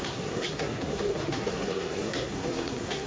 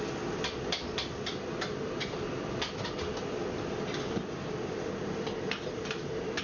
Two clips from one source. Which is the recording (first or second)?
second